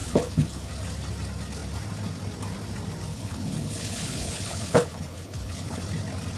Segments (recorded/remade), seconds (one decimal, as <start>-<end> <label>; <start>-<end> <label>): 0.0-0.7 remade; 0.7-3.1 recorded; 3.1-5.8 remade; 5.8-6.4 recorded